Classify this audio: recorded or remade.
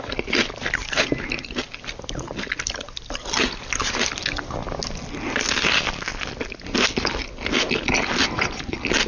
recorded